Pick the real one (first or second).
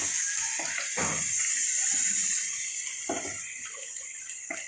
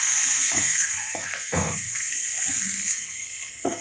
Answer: first